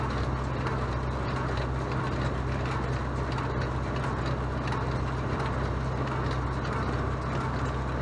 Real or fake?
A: real